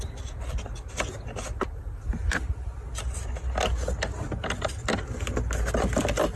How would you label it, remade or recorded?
recorded